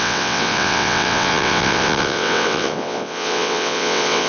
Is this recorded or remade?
remade